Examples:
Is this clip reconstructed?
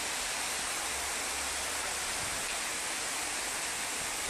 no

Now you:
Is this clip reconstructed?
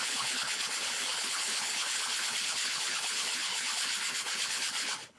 yes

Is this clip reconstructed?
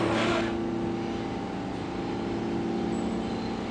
no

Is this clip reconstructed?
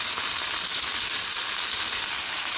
no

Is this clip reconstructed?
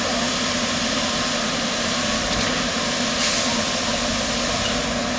no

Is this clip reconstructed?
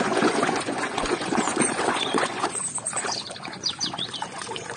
yes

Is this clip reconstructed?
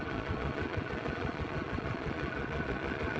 yes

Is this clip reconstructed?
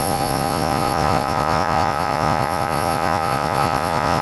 yes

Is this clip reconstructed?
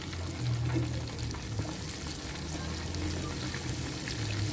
no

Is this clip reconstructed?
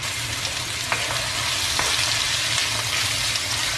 no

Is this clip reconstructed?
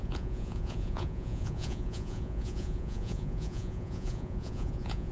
yes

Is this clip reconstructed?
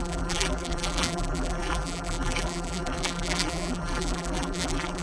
yes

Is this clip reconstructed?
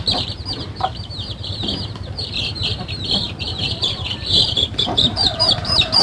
yes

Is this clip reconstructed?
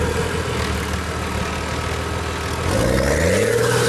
no